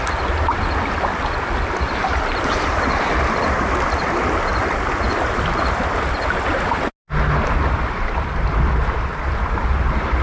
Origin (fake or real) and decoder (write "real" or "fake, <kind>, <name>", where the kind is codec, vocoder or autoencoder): real